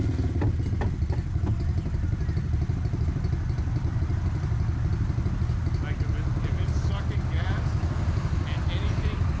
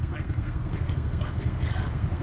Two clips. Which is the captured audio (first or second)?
first